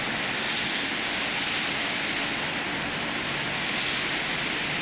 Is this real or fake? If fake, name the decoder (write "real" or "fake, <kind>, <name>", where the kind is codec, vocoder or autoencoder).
real